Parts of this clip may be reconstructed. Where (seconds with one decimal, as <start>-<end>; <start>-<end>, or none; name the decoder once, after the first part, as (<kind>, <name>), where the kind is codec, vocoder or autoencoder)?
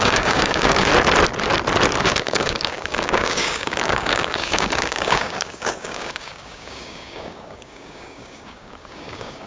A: 0.0-0.9 (codec, DAC); 2.0-9.5